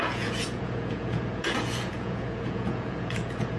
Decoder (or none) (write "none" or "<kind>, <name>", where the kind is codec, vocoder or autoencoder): vocoder, Vocos